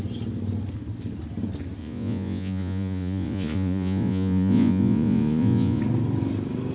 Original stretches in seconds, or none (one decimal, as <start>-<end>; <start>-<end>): 0.0-1.8; 5.8-6.7